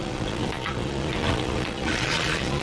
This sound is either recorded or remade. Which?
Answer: remade